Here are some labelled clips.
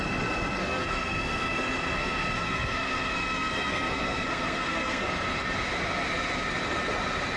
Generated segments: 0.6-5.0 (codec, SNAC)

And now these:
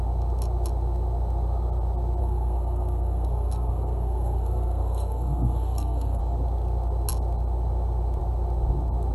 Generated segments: 2.2-6.2 (codec, SNAC)

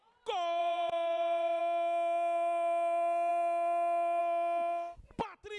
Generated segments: 0.6-1.6 (vocoder, Vocos)

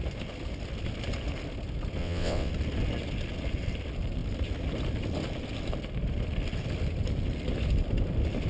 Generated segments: 2.0-2.5 (vocoder, WaveNeXt)

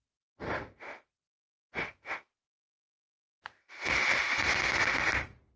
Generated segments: 0.0-1.4 (vocoder, BigVGAN v2); 4.8-5.6